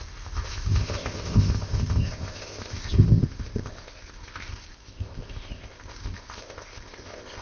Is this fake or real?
fake